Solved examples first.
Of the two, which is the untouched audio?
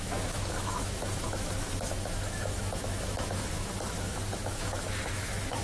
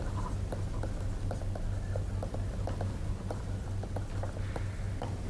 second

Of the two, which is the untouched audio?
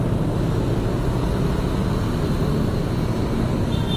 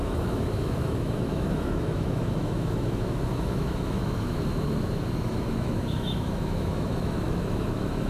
first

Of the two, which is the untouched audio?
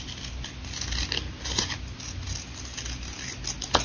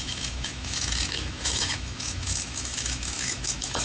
first